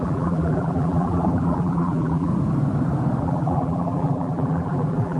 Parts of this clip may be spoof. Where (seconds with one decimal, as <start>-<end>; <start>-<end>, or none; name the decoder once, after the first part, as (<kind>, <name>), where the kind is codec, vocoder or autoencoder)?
0.0-2.3 (vocoder, BigVGAN v2); 3.2-5.2